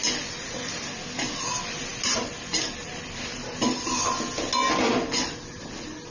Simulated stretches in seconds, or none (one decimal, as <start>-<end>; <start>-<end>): none